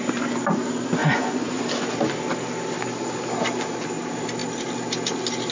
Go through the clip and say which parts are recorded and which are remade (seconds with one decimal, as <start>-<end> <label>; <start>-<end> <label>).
0.0-1.0 recorded; 1.0-1.6 remade; 1.6-5.5 recorded